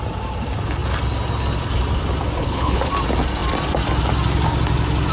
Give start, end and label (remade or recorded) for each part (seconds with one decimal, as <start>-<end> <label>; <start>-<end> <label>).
0.0-2.4 recorded; 2.4-2.9 remade; 2.9-5.1 recorded